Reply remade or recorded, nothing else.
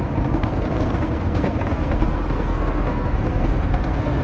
remade